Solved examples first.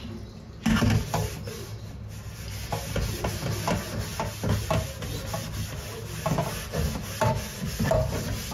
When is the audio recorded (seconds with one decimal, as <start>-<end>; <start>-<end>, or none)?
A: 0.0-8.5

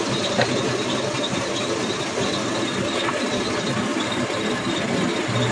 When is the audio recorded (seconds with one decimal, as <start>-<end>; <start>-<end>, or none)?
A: 0.0-5.5

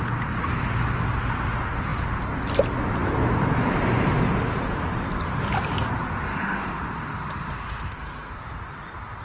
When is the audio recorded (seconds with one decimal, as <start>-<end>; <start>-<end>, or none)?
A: 0.0-6.3; 8.3-9.2

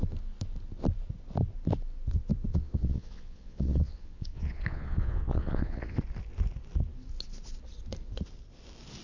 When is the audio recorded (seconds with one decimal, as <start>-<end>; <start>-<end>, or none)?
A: 0.0-2.5; 6.0-9.0